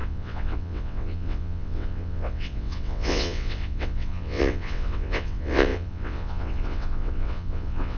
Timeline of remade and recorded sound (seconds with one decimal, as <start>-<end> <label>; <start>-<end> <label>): 0.0-8.0 remade